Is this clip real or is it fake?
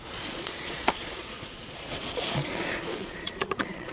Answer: fake